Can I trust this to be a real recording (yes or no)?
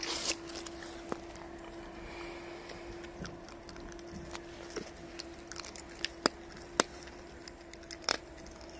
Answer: yes